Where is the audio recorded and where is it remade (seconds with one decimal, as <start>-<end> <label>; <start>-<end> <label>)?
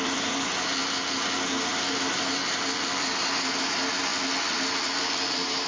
0.0-0.7 remade; 0.7-1.7 recorded; 1.7-4.1 remade; 4.1-5.0 recorded; 5.0-5.7 remade